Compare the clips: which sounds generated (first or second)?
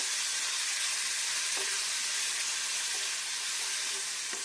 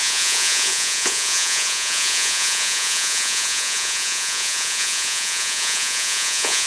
second